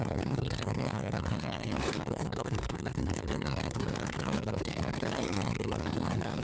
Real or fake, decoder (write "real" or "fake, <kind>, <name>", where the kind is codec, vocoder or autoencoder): fake, codec, SNAC